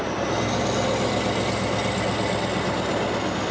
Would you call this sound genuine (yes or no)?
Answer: yes